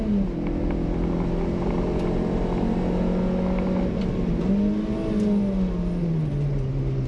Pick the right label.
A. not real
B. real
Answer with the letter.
B